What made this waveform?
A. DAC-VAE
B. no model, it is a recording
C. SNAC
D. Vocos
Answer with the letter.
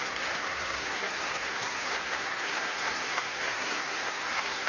C